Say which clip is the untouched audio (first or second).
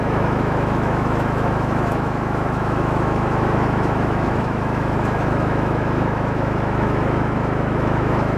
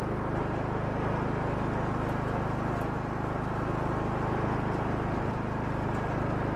second